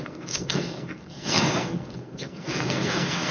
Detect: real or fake fake